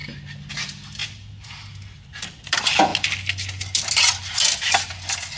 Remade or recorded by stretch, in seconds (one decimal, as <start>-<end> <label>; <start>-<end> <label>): 0.0-5.4 recorded